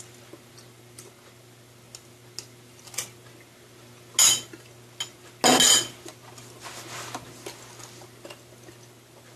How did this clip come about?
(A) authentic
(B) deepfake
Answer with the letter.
A